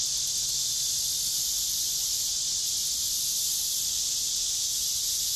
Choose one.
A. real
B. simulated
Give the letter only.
A